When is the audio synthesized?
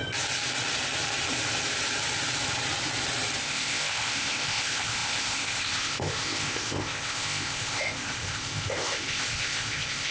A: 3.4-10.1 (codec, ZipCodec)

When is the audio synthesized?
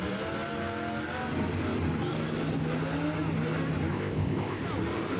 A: 3.9-4.6 (codec, ZipCodec)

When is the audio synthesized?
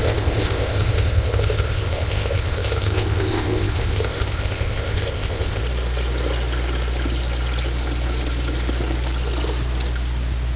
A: 0.0-5.6 (codec, ZipCodec)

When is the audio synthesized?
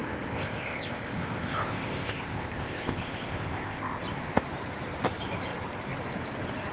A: 0.0-4.0 (codec, ZipCodec)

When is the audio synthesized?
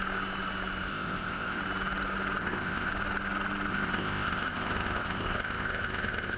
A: 0.9-1.6 (codec, ZipCodec); 2.4-2.9; 3.7-6.4